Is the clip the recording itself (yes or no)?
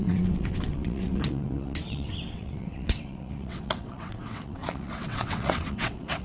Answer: no